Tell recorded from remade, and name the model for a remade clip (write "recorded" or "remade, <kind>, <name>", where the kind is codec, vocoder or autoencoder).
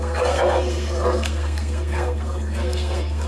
remade, codec, SNAC